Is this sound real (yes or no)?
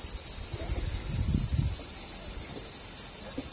yes